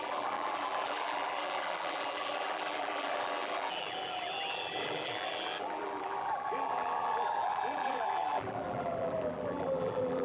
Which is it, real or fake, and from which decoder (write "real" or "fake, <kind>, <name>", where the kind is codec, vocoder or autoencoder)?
fake, vocoder, BigVGAN v2